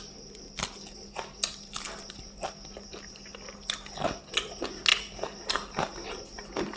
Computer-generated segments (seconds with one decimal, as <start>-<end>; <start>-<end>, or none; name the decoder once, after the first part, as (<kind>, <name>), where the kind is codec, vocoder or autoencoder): none